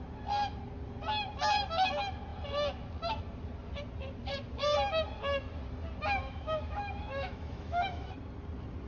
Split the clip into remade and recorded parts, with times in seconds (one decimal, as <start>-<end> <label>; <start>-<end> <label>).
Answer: 0.0-6.2 recorded; 6.2-8.1 remade; 8.1-8.9 recorded